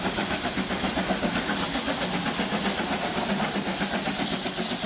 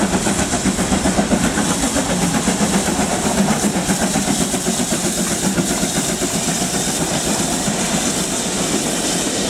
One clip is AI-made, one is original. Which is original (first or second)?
first